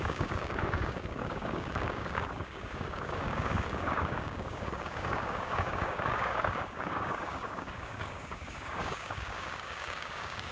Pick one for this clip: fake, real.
fake